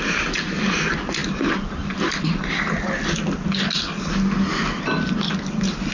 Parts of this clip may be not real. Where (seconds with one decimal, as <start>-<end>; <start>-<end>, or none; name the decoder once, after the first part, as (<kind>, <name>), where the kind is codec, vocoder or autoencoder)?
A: 1.2-2.1 (vocoder, BigVGAN v2)